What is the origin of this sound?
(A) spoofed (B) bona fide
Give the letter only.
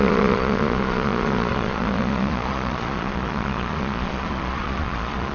A